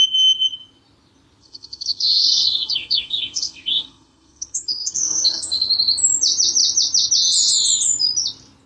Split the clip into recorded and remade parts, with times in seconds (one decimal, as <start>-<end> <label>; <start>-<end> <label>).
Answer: 0.0-1.4 recorded; 1.4-5.7 remade; 5.7-8.7 recorded